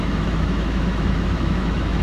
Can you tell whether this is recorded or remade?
remade